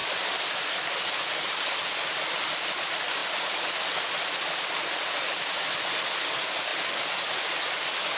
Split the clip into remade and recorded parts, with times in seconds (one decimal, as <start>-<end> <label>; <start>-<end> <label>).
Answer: 0.0-8.2 recorded